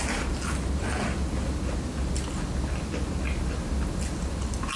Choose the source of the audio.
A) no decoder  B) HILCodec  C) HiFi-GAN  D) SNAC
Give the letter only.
A